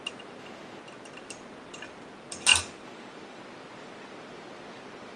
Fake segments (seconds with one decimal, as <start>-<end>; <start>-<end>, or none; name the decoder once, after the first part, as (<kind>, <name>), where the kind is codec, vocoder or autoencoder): 2.5-3.4 (vocoder, BigVGAN v2)